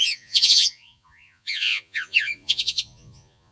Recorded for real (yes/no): no